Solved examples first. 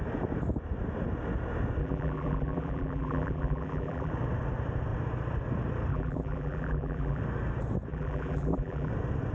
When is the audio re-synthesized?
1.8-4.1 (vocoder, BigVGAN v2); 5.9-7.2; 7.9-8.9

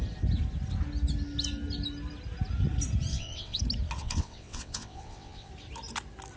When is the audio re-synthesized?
3.1-3.6 (vocoder, WaveNeXt); 4.0-5.5

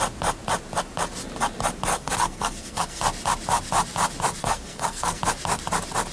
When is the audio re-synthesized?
1.9-3.0 (codec, SNAC); 4.4-5.2

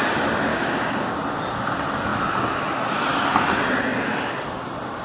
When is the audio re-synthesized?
0.5-1.2 (codec, DAC)

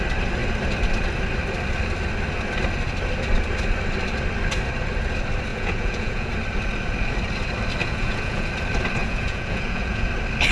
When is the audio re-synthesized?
5.5-6.3 (vocoder, Vocos); 7.8-8.5; 9.0-10.1

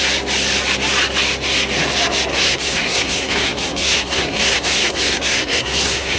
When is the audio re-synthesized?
2.3-6.2 (codec, SNAC)

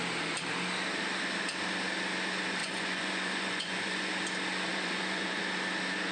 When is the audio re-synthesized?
2.6-4.1 (vocoder, Vocos); 4.7-5.4

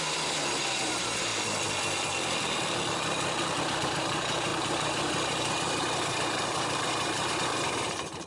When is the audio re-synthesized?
0.0-1.3 (vocoder, BigVGAN v2); 3.6-8.3